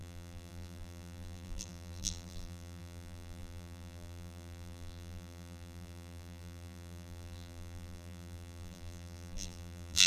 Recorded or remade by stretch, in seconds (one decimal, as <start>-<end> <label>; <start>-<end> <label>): 0.0-10.1 remade